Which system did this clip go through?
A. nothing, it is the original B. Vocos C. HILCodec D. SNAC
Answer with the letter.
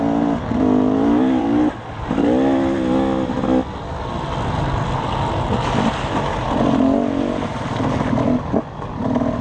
A